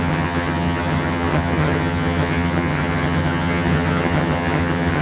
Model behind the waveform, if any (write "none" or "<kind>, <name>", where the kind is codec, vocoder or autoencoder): vocoder, HiFi-GAN